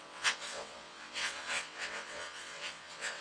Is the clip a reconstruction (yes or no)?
yes